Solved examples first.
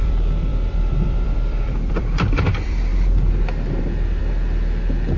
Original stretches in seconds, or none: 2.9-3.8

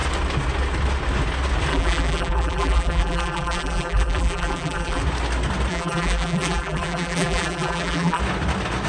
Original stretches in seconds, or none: 0.0-1.7; 5.0-5.7; 8.2-8.9

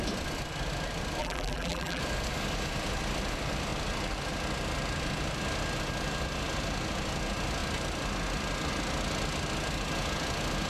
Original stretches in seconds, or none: 0.0-1.2; 2.0-10.7

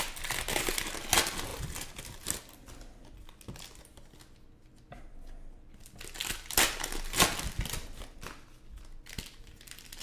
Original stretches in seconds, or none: 0.0-10.0

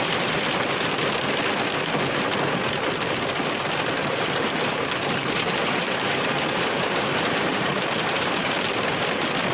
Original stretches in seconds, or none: 0.0-4.0; 8.5-9.5